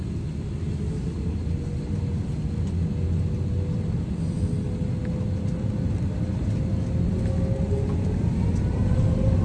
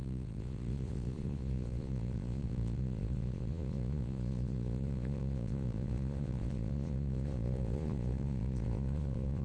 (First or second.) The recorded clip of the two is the first